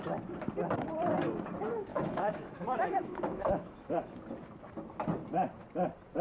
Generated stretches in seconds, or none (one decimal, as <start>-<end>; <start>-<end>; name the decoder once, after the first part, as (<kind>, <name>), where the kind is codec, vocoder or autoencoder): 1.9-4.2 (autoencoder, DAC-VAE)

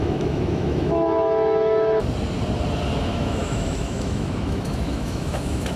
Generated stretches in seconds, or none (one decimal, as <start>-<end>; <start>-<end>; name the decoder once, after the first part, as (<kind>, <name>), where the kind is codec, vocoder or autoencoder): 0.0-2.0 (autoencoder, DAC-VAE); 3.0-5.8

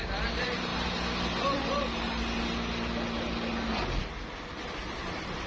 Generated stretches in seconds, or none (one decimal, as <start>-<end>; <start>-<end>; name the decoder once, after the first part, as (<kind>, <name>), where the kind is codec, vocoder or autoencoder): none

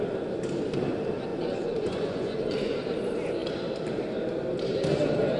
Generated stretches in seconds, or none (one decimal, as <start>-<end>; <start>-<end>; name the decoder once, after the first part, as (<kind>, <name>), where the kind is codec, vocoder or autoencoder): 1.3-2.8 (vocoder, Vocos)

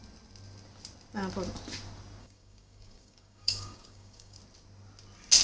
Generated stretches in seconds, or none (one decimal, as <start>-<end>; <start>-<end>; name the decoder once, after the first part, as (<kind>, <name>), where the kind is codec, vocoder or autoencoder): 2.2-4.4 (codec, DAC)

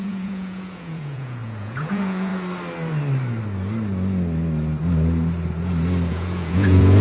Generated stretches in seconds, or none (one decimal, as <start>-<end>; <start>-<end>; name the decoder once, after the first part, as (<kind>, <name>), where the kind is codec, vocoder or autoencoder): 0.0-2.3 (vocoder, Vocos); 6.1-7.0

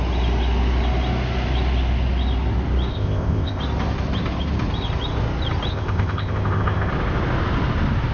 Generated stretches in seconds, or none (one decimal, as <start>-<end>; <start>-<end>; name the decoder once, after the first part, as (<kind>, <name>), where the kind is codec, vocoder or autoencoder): 2.9-3.6 (codec, ZipCodec); 5.7-6.9